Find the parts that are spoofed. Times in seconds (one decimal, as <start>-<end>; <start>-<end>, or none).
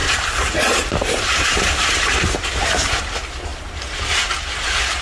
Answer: 0.0-3.0; 3.5-4.3